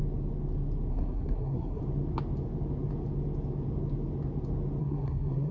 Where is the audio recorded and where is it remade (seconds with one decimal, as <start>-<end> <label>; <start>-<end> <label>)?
0.0-0.9 recorded; 0.9-1.8 remade; 1.8-4.8 recorded; 4.8-5.5 remade